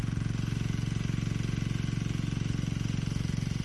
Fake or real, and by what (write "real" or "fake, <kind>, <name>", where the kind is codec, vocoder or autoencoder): real